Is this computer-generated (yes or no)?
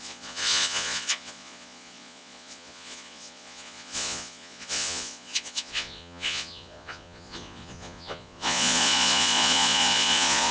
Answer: yes